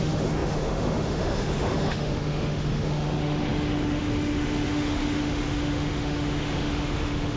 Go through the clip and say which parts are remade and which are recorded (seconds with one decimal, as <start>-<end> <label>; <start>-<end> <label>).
0.0-7.4 remade